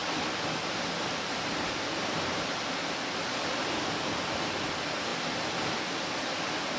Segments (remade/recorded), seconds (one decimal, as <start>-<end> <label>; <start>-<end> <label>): 0.0-6.8 recorded